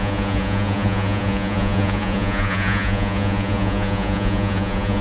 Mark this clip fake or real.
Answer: fake